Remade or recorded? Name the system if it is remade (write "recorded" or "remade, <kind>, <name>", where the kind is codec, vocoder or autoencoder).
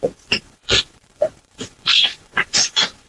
remade, vocoder, Vocos